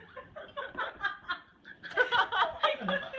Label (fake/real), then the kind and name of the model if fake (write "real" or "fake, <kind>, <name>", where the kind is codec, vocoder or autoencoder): real